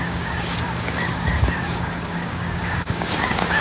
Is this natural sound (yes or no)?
no